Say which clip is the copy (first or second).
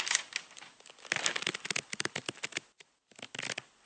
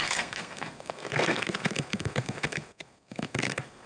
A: second